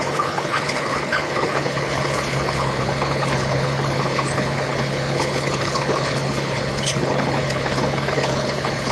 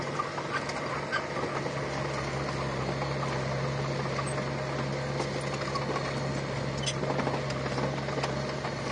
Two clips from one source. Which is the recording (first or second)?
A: second